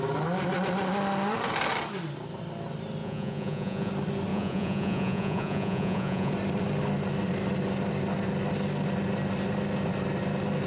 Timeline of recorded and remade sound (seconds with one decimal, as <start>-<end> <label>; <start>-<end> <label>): 0.0-3.0 recorded; 3.0-3.9 remade; 3.9-4.3 recorded; 4.3-6.3 remade; 6.3-10.7 recorded